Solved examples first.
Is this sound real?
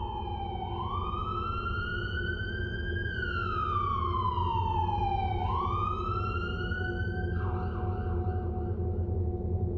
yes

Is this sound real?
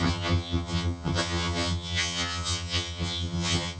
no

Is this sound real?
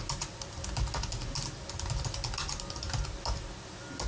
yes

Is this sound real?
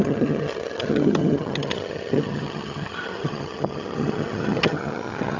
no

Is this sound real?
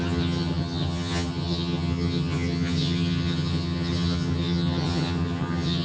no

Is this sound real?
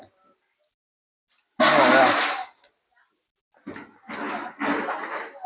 yes